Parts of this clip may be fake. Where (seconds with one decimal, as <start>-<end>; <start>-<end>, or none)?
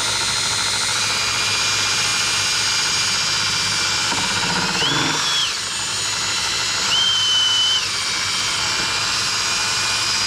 5.4-8.8